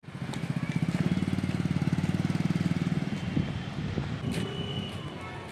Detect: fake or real real